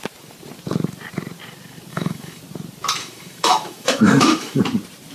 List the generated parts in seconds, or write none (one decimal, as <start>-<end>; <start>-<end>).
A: 1.9-2.4; 3.0-4.6